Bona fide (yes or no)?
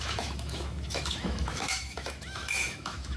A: no